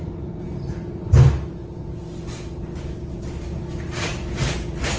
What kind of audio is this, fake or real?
real